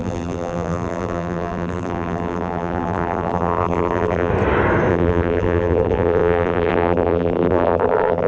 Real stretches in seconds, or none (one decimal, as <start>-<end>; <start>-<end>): 4.3-4.9